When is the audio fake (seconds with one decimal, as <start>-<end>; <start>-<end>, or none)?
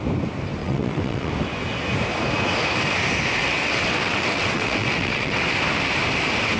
0.6-1.3; 3.4-5.4